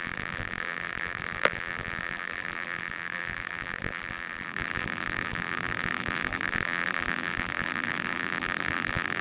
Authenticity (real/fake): fake